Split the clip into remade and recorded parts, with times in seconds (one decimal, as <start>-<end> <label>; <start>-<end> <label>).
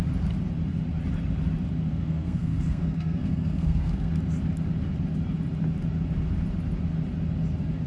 0.0-1.9 recorded; 1.9-4.1 remade; 4.1-7.9 recorded